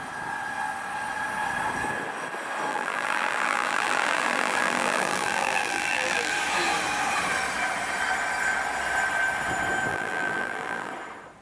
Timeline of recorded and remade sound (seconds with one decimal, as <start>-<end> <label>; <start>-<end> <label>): 0.0-2.7 recorded; 2.7-6.3 remade; 6.3-9.9 recorded; 9.9-10.9 remade; 10.9-11.4 recorded